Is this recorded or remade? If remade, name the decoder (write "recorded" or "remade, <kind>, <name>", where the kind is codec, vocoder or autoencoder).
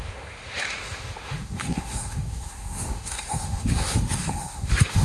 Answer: remade, autoencoder, DAC-VAE